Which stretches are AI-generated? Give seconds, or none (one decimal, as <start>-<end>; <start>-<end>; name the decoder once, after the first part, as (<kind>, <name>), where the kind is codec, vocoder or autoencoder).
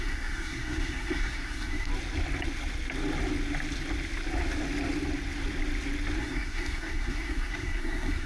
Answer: 0.0-1.9 (codec, SNAC); 6.2-8.3